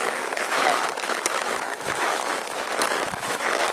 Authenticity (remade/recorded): remade